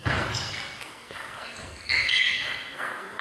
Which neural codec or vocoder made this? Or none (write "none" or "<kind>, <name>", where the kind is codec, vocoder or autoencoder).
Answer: codec, SNAC